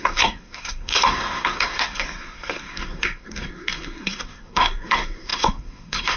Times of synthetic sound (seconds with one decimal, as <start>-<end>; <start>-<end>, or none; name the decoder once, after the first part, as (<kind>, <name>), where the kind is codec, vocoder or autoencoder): 0.0-6.2 (codec, SNAC)